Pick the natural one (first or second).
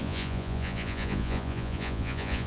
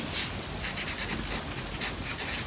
second